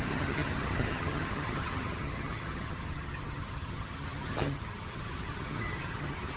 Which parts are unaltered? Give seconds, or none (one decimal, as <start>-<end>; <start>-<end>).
none